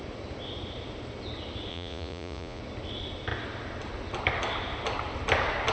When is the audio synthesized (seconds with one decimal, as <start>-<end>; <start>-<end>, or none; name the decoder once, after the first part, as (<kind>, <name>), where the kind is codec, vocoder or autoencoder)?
1.7-2.6 (vocoder, Vocos)